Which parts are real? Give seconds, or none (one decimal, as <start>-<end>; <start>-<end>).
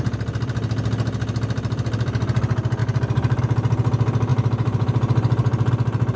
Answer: 0.0-2.8; 3.4-4.3; 5.7-6.2